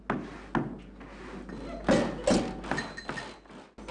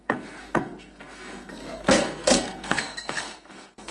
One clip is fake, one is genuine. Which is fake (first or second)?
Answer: second